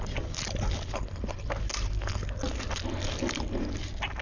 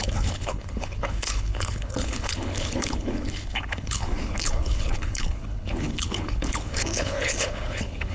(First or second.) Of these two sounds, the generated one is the second